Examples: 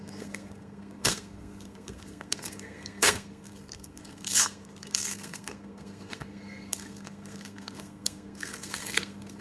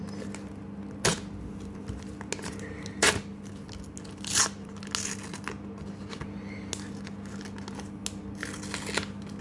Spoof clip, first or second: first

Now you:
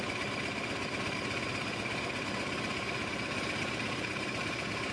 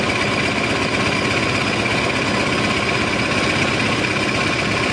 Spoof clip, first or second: first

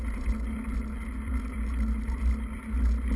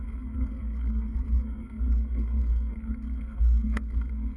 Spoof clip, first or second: second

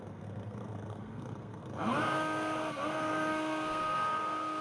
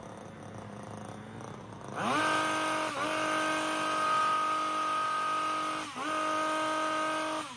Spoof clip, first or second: first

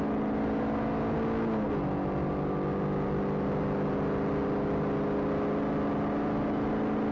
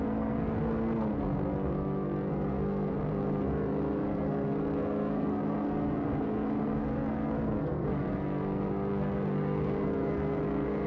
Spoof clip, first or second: second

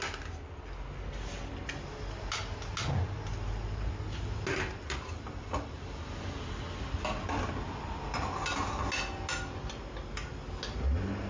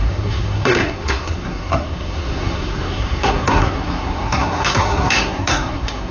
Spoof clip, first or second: second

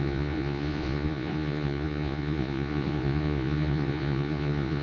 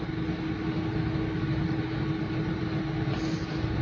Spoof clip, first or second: first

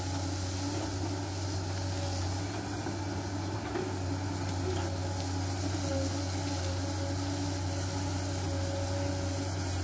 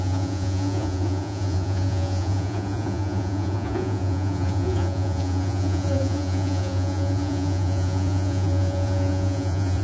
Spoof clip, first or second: second